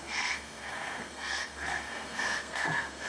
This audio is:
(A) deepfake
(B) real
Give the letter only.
A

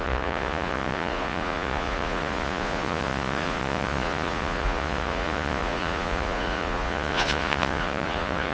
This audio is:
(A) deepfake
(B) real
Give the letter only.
A